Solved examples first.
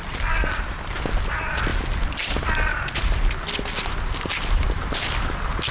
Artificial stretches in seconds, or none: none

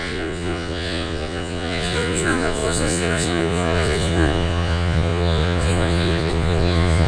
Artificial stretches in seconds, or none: 0.0-7.1 (vocoder, Vocos)

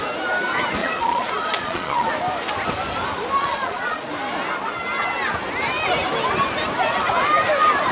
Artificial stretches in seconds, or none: 0.8-2.1 (vocoder, Vocos); 3.4-4.1

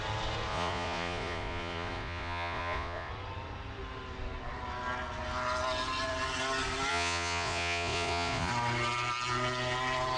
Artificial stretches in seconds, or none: 0.5-3.1 (vocoder, Vocos); 6.9-8.5

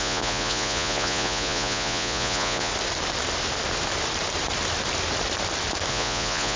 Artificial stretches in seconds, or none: 0.0-2.7 (vocoder, Vocos); 5.9-6.6